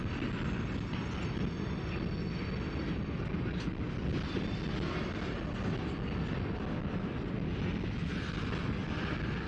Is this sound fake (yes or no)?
no